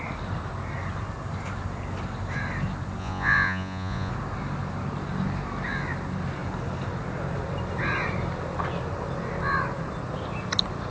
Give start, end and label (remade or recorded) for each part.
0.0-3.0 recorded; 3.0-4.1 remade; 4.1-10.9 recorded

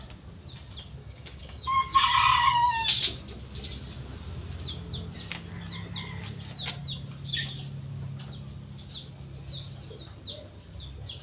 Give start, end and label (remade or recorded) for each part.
0.0-1.0 recorded; 1.0-2.6 remade; 2.6-11.2 recorded

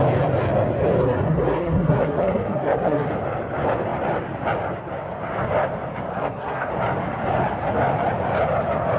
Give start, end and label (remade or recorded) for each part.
0.0-1.0 recorded; 1.0-3.1 remade; 3.1-6.1 recorded; 6.1-6.7 remade; 6.7-9.0 recorded

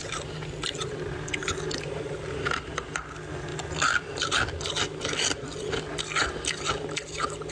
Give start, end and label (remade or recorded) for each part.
0.0-7.5 recorded

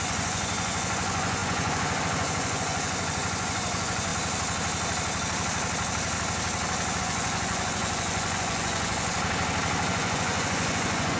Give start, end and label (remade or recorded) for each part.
0.0-4.1 remade; 4.1-7.0 recorded; 7.0-9.1 remade; 9.1-9.9 recorded; 9.9-11.2 remade

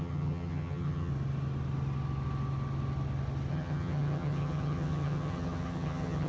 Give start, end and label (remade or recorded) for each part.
0.0-1.1 remade; 1.1-3.5 recorded; 3.5-6.3 remade